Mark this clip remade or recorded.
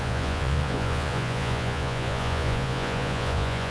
remade